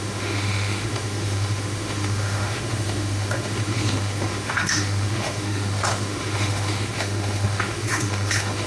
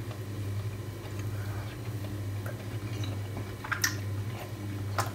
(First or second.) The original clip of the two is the second